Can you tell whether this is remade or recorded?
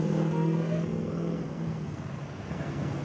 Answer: remade